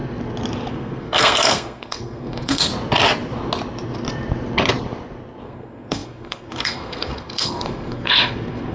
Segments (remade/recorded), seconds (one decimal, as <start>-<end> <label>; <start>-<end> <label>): 0.0-0.7 recorded; 0.7-2.7 remade; 2.7-5.4 recorded; 5.4-8.7 remade